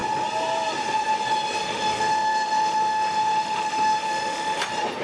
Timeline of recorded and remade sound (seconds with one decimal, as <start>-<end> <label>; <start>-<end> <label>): 0.0-1.6 recorded; 1.6-4.6 remade; 4.6-5.0 recorded